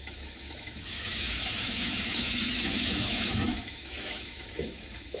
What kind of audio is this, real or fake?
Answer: fake